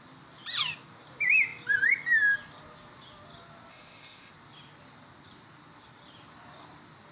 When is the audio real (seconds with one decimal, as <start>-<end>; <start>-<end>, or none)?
0.0-3.7; 4.3-7.1